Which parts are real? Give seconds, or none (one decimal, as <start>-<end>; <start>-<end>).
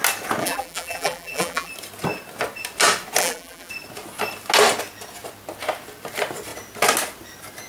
0.0-0.4; 1.7-3.2; 3.7-7.7